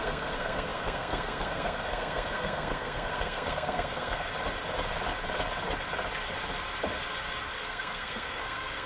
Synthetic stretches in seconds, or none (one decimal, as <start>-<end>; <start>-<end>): 0.0-4.3; 7.5-8.9